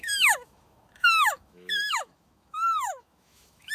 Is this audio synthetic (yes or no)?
yes